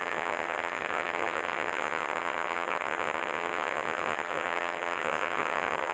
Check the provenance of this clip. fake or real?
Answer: fake